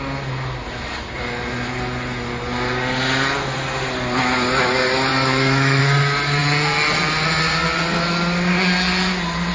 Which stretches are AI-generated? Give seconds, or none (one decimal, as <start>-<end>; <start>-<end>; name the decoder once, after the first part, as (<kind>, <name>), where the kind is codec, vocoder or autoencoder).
5.1-5.8 (autoencoder, DAC-VAE)